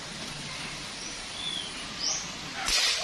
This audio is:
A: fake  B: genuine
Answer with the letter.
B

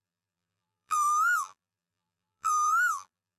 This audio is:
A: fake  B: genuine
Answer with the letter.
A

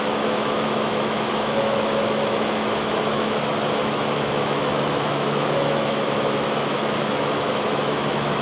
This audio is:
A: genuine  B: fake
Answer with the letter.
B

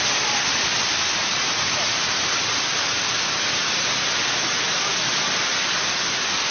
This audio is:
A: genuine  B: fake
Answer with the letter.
A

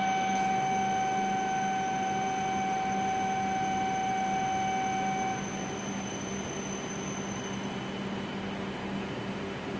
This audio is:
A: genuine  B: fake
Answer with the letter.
A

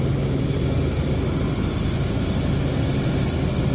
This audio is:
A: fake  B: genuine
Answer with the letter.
B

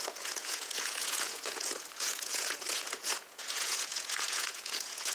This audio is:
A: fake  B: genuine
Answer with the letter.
A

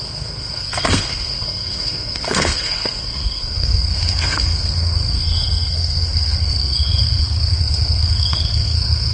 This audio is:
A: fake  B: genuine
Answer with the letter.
A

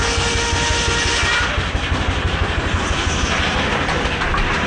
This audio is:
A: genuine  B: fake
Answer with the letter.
A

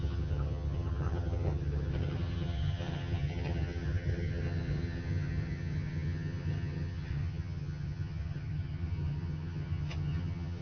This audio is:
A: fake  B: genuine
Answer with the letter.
A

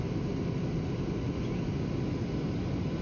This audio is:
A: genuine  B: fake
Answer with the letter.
A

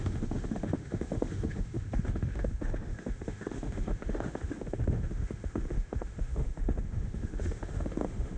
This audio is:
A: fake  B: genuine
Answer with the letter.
A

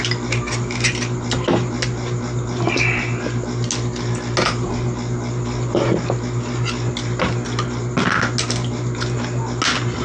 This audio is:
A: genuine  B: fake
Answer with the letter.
A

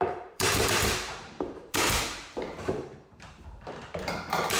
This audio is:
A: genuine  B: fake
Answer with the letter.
B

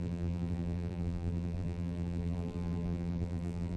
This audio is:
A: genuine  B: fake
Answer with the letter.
B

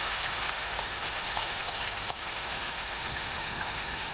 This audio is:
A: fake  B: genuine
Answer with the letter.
A